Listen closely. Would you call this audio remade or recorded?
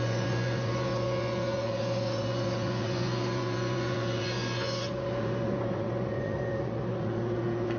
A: remade